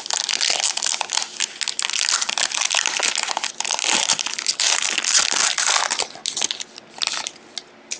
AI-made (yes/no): no